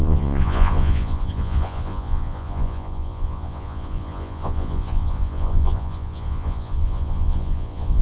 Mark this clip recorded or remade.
remade